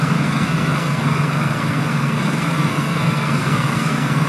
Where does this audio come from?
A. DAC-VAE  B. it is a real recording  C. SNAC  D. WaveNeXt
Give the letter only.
C